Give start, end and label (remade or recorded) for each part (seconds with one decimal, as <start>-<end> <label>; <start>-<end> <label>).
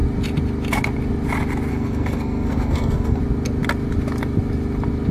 0.0-1.7 recorded; 1.7-3.2 remade; 3.2-5.1 recorded